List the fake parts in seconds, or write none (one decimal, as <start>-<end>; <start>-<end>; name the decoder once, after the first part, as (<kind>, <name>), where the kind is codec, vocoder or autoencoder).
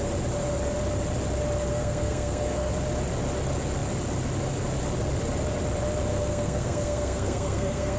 1.7-2.7 (codec, SNAC); 6.1-8.0